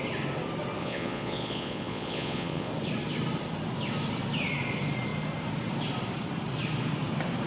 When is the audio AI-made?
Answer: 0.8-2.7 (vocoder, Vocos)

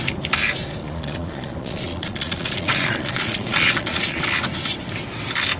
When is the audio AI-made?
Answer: 0.8-4.2 (vocoder, Vocos)

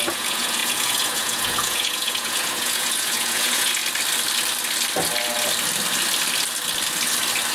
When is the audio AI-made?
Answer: 0.0-3.8 (vocoder, Vocos)

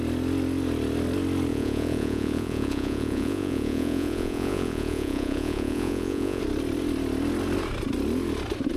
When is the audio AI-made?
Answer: 1.5-6.4 (vocoder, Vocos)

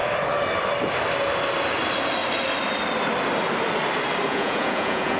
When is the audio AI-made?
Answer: 4.3-5.2 (vocoder, Vocos)

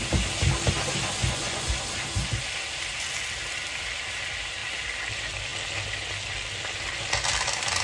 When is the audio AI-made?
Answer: 1.2-1.7 (vocoder, Vocos)

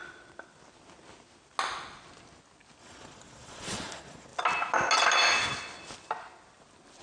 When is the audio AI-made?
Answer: 2.8-4.3 (vocoder, Vocos)

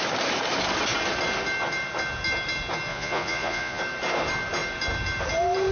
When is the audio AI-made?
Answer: 2.9-3.8 (vocoder, Vocos)